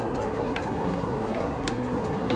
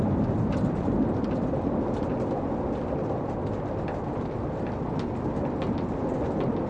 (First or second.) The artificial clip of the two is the first